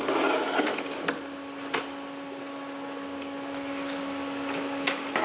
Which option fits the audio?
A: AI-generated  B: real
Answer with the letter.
B